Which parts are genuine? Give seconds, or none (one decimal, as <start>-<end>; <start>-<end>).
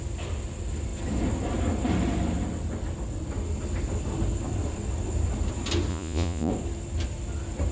0.0-5.9; 6.5-7.7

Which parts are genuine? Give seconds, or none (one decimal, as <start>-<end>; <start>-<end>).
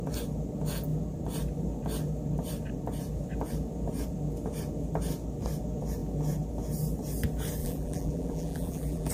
0.0-7.6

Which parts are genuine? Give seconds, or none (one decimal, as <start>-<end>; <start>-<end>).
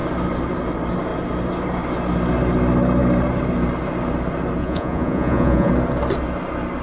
0.0-4.6; 5.7-6.8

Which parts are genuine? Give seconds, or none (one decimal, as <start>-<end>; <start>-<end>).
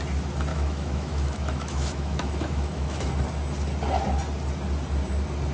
0.0-0.5; 3.1-5.5